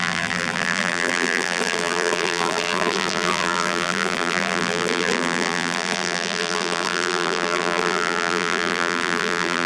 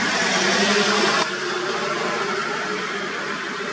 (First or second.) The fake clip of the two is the first